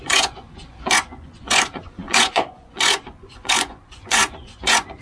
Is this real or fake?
fake